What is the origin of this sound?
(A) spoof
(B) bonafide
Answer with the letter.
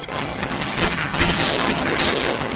A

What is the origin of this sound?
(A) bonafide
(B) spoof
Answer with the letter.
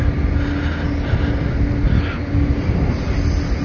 A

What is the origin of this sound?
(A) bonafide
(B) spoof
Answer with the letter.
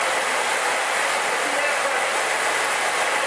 A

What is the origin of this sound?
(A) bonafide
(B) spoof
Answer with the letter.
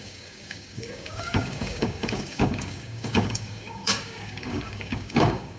B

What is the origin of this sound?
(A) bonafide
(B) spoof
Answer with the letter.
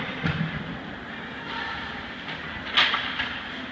A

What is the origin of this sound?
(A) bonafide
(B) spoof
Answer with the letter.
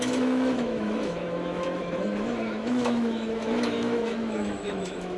B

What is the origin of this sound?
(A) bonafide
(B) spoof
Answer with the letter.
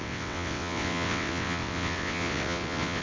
B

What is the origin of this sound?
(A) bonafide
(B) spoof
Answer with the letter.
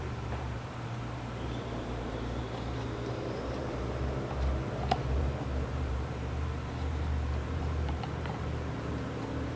B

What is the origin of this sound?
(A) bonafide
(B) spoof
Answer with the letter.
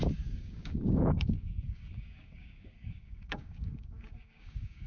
B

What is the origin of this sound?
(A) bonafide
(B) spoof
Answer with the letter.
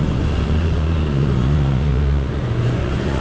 B